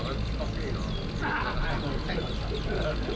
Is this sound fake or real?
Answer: real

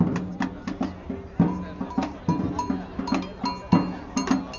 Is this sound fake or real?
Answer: real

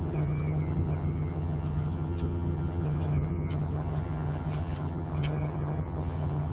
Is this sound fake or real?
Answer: fake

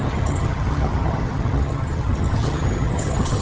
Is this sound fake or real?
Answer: fake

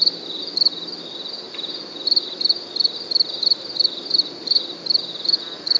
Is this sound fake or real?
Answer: real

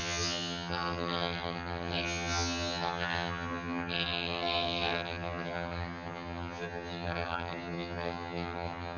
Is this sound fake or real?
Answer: fake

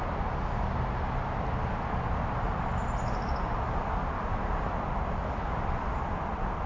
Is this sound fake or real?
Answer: real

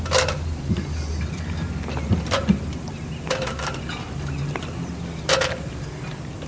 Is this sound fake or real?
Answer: real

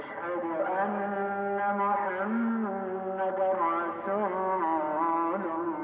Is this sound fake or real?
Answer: real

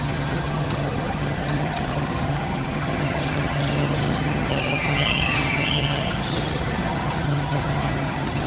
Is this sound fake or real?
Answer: fake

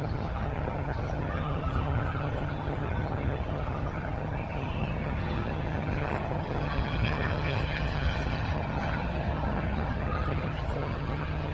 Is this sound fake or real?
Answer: fake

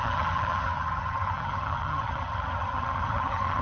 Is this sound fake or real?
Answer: fake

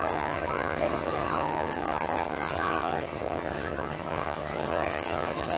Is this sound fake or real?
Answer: fake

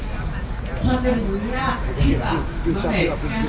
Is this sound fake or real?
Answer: real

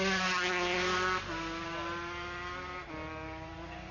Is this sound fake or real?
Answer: real